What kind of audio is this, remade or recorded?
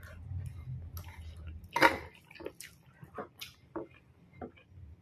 recorded